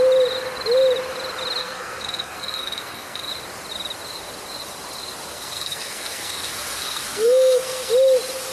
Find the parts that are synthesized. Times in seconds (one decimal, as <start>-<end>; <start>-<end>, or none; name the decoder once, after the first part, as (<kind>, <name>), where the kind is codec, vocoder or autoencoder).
1.6-3.3 (codec, SNAC); 5.3-7.9